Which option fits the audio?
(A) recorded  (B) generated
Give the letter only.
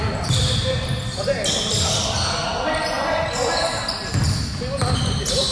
A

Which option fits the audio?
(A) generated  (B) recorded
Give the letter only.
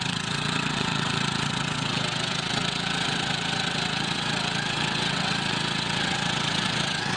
A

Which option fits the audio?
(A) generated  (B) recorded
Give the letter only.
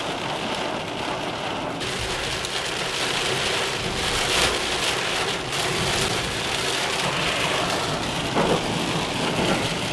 B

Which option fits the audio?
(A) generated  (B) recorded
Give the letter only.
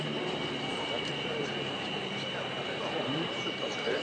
A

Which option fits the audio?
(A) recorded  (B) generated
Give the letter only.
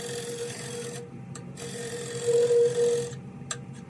A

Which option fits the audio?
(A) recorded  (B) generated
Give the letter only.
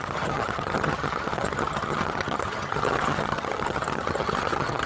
B